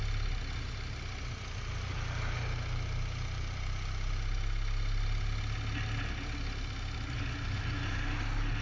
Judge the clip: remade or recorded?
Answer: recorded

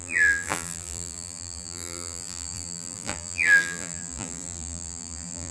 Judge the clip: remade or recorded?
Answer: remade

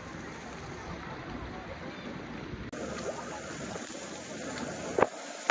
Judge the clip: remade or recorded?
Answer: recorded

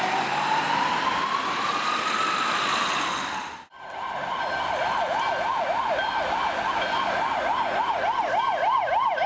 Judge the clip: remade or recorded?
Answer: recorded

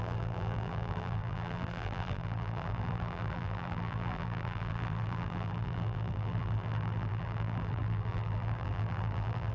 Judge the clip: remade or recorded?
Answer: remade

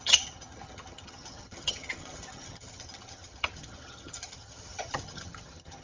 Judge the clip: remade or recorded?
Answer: remade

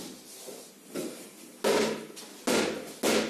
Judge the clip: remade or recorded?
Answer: recorded